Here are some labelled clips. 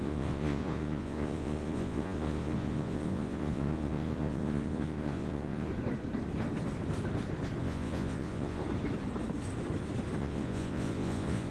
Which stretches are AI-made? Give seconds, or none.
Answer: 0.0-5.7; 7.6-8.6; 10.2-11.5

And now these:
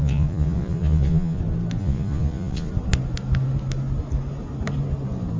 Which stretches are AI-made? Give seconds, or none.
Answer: 0.0-1.4; 1.8-2.7

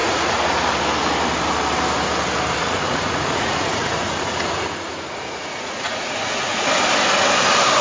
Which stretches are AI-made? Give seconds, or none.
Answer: 0.0-0.6; 2.6-6.7